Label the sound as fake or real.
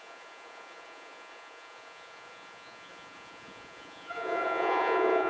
fake